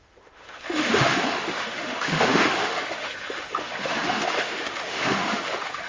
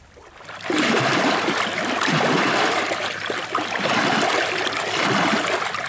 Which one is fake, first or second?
first